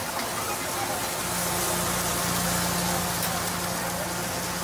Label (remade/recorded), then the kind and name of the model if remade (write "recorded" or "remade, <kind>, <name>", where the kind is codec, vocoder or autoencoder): recorded